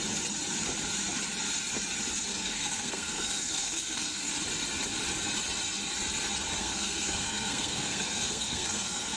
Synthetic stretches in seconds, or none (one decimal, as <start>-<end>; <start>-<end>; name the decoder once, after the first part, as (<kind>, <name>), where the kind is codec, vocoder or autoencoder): 2.3-4.3 (codec, SNAC); 6.6-9.2